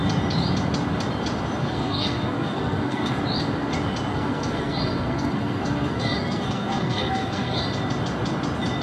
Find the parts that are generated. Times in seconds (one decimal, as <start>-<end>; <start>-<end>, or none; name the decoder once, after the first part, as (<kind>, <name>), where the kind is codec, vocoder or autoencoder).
1.6-3.2 (codec, SNAC); 4.1-7.6